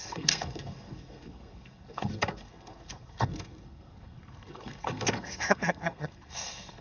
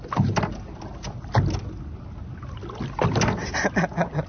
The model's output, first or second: first